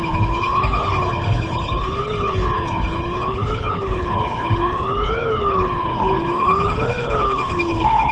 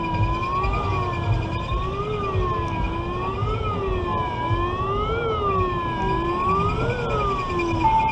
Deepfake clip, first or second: first